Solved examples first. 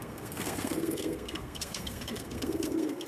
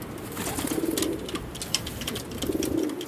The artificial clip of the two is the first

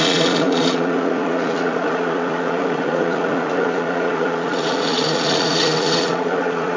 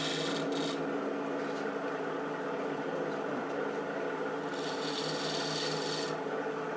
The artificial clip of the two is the first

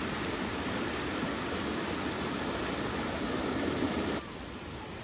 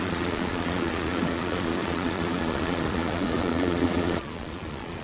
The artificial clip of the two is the second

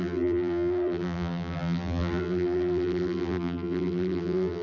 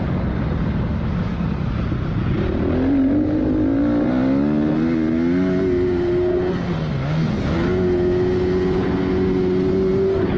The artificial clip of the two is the first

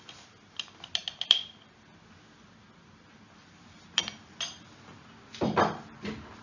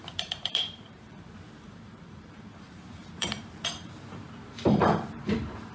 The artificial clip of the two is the second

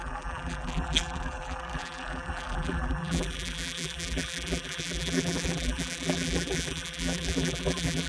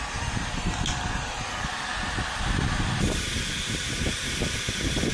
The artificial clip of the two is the first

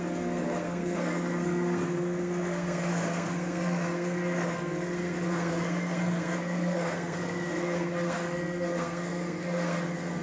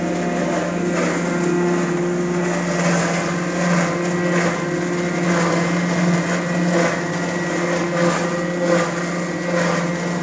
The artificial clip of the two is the first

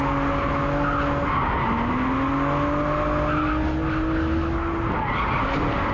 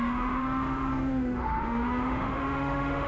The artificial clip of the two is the second